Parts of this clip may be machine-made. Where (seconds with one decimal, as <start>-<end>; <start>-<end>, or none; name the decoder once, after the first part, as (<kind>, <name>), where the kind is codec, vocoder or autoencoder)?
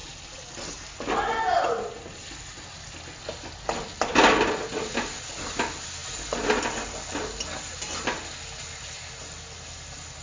none